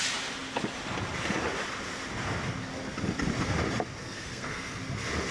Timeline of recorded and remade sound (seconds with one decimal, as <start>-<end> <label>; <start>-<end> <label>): 0.0-4.0 recorded; 4.0-4.8 remade; 4.8-5.3 recorded